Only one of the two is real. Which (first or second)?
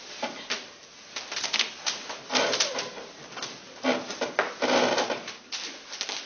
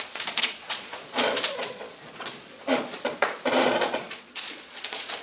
first